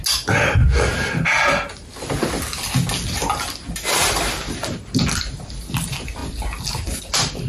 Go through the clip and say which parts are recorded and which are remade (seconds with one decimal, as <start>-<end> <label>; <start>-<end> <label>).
0.0-7.5 recorded